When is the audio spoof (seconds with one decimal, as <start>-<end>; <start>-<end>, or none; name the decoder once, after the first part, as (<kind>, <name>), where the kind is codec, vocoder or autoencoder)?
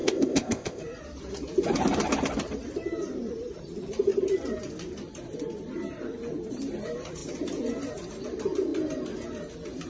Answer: 0.0-0.8 (codec, ZipCodec)